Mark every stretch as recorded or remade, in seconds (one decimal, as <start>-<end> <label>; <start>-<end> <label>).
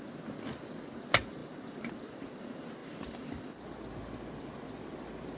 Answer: 0.0-5.4 recorded